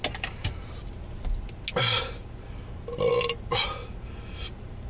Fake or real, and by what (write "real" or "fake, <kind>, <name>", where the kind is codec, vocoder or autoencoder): real